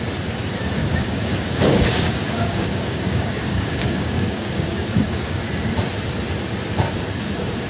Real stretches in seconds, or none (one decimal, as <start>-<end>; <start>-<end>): 0.0-0.8; 5.4-7.7